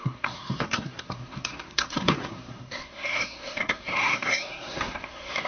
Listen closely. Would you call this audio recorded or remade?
remade